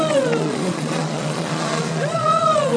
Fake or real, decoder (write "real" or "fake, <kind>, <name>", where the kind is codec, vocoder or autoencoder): fake, vocoder, Vocos